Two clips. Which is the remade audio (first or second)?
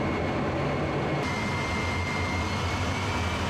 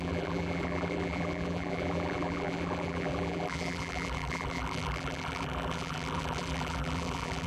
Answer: second